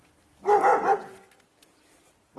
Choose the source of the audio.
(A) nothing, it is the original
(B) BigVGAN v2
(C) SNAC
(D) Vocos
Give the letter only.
A